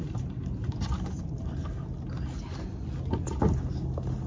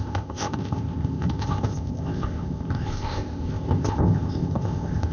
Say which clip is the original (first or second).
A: first